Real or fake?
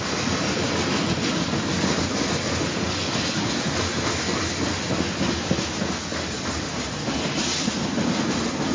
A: real